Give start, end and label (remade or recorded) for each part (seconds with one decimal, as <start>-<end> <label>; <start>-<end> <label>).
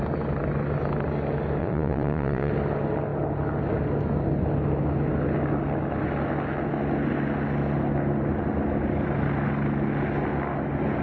0.0-1.6 recorded; 1.6-2.5 remade; 2.5-11.0 recorded